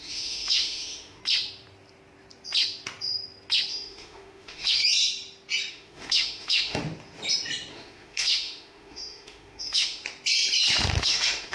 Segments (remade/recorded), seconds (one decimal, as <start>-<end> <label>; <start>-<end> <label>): 0.0-1.2 remade; 1.2-3.7 recorded; 3.7-4.8 remade; 4.8-5.7 recorded; 5.7-6.8 remade; 6.8-7.7 recorded; 7.7-10.0 remade; 10.0-11.0 recorded; 11.0-11.5 remade